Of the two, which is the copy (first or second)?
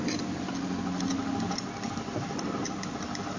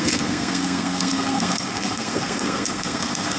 second